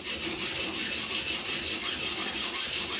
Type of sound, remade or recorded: recorded